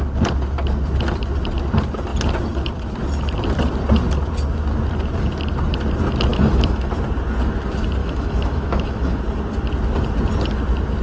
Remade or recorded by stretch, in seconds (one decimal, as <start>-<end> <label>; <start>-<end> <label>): 0.0-6.3 recorded; 6.3-6.9 remade; 6.9-8.0 recorded; 8.0-9.2 remade; 9.2-11.0 recorded